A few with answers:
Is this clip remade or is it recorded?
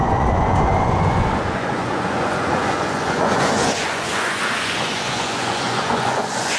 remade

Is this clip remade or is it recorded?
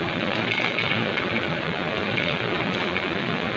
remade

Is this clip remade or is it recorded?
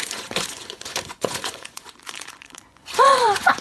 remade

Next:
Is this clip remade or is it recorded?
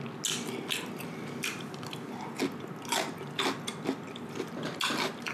recorded